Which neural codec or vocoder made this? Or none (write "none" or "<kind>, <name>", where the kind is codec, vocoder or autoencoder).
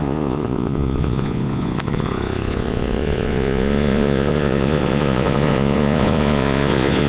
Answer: vocoder, Vocos